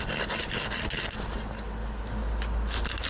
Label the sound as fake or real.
real